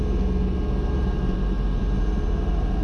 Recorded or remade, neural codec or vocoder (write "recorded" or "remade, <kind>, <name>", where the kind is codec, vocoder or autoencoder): recorded